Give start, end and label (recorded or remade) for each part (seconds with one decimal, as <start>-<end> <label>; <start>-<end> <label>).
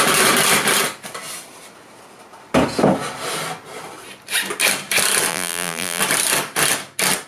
0.0-5.3 recorded; 5.3-6.0 remade; 6.0-7.3 recorded